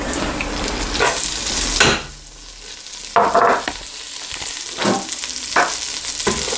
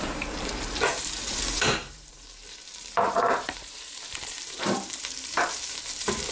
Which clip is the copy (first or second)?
second